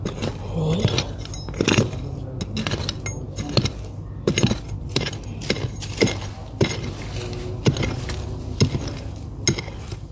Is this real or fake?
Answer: real